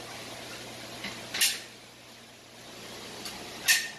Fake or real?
real